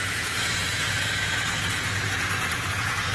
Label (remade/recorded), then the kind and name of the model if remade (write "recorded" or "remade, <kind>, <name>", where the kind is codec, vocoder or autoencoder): remade, vocoder, Vocos